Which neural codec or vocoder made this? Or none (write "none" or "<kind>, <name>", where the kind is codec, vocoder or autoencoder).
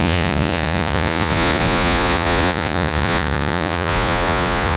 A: vocoder, Vocos